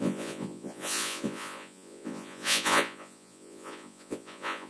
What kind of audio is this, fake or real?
fake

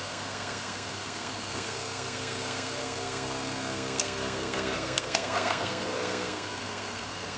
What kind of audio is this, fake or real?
fake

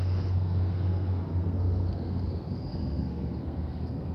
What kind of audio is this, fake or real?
fake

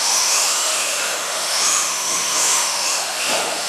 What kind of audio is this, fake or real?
fake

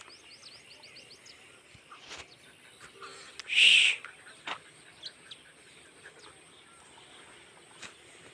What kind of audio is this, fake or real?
real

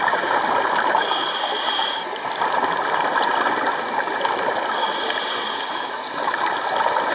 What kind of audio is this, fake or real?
real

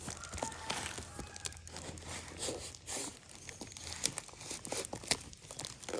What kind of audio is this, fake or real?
real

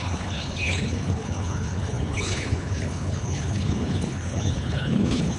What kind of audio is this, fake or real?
fake